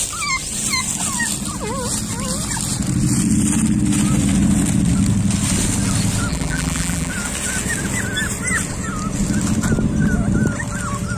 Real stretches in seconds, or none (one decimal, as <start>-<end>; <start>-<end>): 0.0-6.3; 7.1-11.2